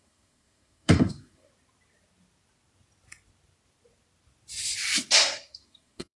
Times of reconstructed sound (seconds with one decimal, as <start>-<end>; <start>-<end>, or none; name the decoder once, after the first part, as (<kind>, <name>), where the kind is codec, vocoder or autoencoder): 0.0-1.5 (codec, SNAC); 5.2-6.2